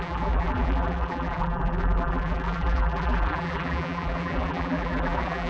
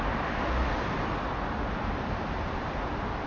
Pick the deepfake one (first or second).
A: first